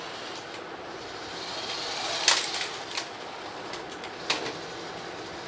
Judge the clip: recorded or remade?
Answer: recorded